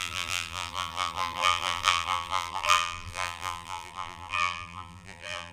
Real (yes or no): no